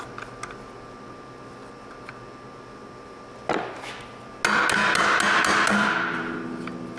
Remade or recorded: recorded